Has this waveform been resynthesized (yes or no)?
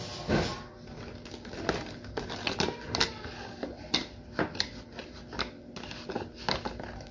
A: no